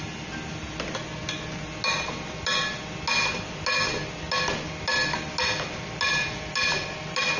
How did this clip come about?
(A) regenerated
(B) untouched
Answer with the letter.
B